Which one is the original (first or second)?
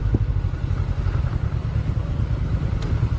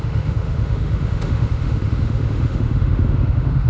first